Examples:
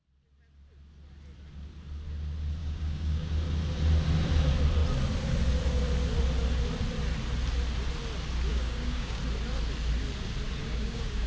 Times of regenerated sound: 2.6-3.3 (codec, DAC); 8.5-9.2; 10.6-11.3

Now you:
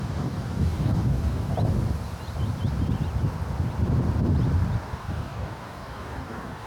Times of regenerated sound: 0.0-1.5 (codec, DAC); 4.9-6.7

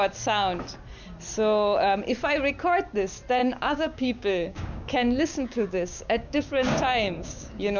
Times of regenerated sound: 3.4-7.8 (codec, DAC)

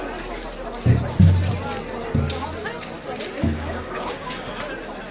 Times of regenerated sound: 3.4-4.5 (codec, DAC)

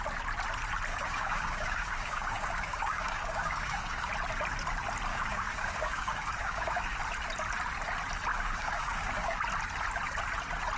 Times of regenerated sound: 0.9-4.1 (codec, DAC); 5.1-7.0; 8.3-9.4

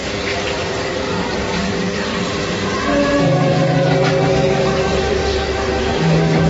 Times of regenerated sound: 0.8-2.1 (codec, DAC); 4.3-5.2; 5.8-6.5

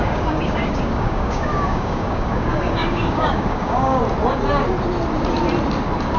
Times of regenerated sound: 0.0-4.0 (codec, DAC)

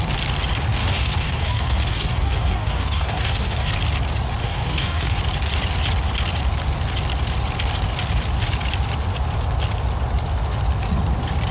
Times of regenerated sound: 0.7-3.7 (codec, DAC); 4.4-5.2